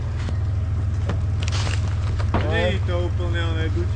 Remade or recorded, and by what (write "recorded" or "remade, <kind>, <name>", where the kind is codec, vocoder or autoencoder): recorded